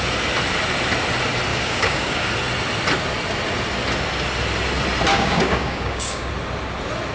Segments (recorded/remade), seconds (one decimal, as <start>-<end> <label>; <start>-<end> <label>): 0.0-1.5 recorded; 1.5-2.3 remade; 2.3-5.1 recorded; 5.1-6.3 remade; 6.3-7.1 recorded